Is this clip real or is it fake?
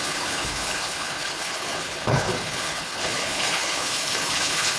fake